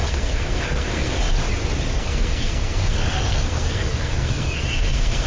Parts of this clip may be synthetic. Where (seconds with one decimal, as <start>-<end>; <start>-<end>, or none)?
0.0-1.2; 1.9-5.3